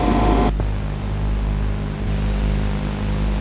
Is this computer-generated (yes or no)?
no